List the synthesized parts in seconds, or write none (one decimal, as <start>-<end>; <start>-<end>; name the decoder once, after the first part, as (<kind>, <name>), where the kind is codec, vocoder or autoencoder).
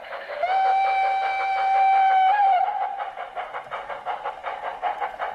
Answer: 0.7-3.9 (vocoder, BigVGAN v2)